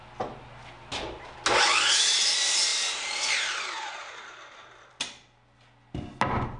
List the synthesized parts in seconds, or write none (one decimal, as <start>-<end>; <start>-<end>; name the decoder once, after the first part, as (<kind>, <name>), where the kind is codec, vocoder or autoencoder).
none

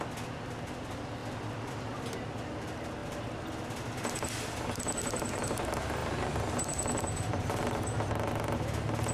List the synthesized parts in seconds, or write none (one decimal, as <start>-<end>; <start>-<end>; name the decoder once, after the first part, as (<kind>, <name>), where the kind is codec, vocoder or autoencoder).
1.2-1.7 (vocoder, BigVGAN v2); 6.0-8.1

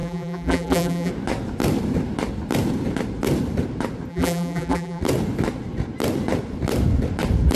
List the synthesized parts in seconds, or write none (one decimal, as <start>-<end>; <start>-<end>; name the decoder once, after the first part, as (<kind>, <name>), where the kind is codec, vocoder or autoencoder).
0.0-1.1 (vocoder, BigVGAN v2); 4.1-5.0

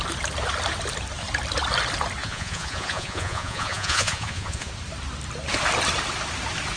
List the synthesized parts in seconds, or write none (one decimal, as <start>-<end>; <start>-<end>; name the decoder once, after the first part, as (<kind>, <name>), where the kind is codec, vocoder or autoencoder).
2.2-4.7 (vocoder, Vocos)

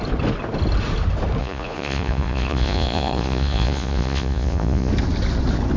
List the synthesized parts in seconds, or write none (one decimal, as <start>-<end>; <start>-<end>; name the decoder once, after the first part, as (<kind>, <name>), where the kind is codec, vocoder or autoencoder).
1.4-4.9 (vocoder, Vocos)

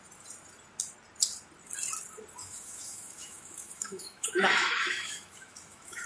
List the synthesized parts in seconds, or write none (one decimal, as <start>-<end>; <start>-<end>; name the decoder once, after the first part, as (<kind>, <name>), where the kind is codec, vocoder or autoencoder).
2.4-6.1 (autoencoder, DAC-VAE)